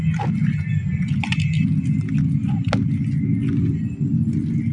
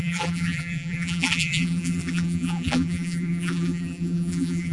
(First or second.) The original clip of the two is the first